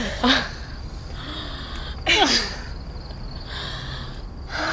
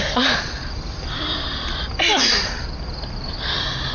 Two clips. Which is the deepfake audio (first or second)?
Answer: second